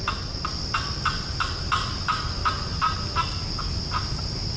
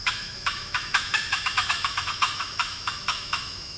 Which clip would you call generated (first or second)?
second